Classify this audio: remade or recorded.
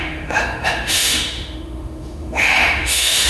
remade